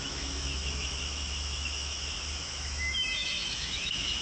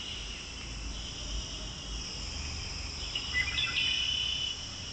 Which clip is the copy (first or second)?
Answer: first